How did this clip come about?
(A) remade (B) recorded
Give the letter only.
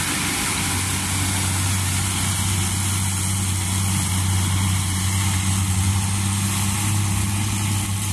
B